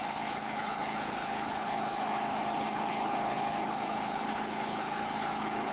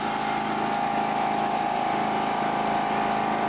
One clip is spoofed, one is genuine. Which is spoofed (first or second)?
first